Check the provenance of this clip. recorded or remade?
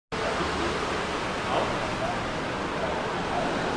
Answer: recorded